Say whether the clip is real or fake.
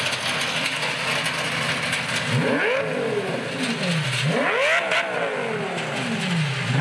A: real